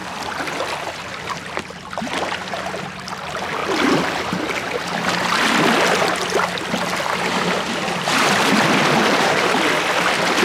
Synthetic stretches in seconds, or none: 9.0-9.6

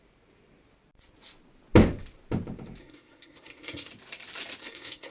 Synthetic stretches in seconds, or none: 2.8-3.9; 4.6-5.1

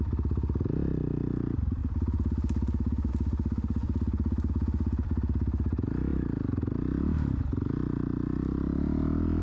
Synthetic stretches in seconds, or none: 1.8-3.1; 3.8-4.5

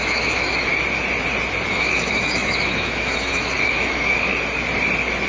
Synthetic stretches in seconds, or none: 0.0-0.7; 1.7-4.3

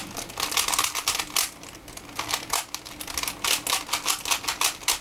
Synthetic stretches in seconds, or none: none